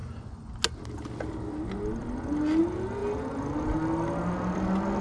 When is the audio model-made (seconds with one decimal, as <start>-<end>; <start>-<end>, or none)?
0.0-0.5